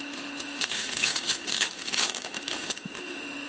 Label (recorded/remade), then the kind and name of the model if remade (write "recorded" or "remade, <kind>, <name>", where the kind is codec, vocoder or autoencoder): remade, autoencoder, DAC-VAE